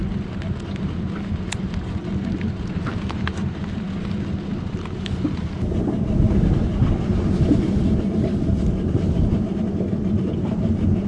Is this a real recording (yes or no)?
yes